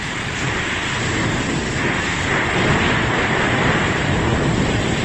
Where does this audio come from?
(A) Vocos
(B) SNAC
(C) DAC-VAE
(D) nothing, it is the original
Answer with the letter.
D